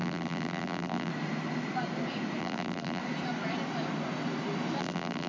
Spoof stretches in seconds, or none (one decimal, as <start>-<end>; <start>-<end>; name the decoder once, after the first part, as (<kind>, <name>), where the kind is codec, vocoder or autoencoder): 0.0-1.1 (vocoder, BigVGAN v2); 2.4-3.0; 4.8-5.3